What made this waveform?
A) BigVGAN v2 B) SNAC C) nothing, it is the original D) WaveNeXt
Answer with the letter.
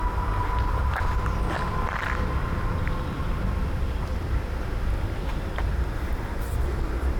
C